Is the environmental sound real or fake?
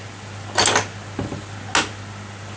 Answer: real